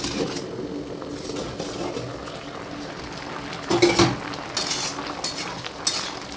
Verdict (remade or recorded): recorded